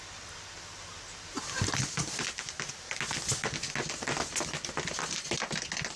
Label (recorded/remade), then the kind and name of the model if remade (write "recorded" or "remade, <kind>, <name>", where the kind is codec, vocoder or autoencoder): recorded